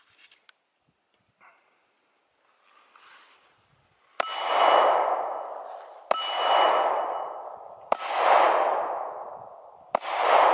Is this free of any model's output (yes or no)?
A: yes